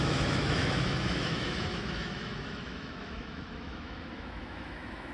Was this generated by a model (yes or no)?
yes